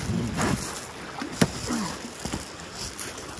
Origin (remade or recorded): recorded